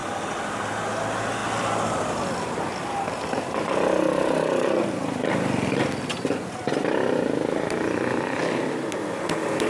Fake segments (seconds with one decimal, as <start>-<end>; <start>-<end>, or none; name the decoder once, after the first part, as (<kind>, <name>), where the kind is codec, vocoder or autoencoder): none